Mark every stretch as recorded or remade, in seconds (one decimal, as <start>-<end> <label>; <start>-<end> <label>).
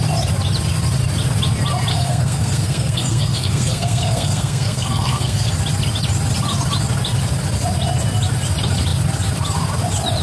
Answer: 0.0-1.9 recorded; 1.9-5.5 remade; 5.5-10.2 recorded